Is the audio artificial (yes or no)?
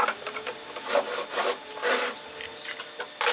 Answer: no